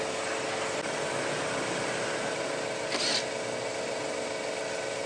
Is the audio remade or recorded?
recorded